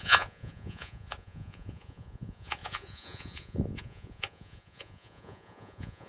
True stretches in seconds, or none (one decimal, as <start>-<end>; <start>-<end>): none